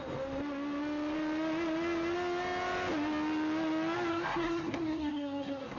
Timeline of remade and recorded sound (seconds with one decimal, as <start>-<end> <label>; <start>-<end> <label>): 0.0-4.1 recorded; 4.1-5.8 remade